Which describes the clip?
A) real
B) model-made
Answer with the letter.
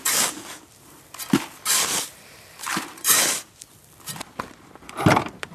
B